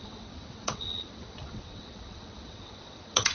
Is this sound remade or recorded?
remade